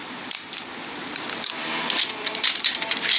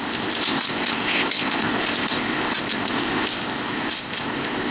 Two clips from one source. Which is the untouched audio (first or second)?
first